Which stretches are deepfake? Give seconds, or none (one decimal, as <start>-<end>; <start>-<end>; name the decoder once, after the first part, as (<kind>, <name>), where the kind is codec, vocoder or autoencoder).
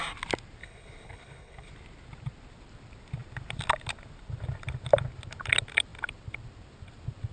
0.6-1.7 (codec, HILCodec)